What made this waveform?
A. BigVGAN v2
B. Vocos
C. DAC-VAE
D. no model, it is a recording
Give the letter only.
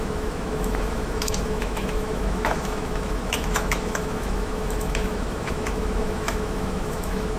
C